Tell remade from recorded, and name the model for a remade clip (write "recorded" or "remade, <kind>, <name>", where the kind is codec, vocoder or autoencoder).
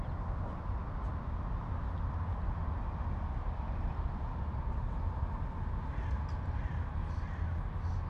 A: recorded